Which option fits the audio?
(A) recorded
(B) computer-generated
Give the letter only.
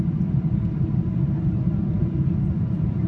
B